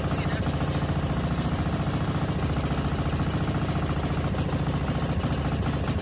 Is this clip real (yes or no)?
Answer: yes